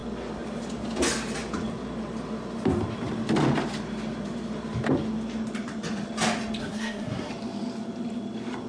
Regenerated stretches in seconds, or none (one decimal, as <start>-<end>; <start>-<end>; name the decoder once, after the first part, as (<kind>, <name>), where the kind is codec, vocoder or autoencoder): 6.6-7.3 (codec, SNAC)